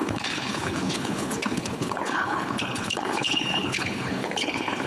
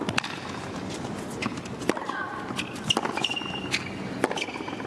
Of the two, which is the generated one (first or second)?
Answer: first